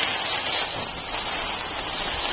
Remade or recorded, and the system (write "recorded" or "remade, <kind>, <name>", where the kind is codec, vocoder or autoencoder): recorded